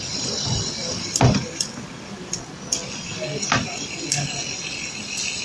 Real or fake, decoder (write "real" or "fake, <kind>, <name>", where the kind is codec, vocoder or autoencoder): real